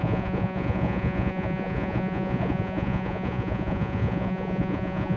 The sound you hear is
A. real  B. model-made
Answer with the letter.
B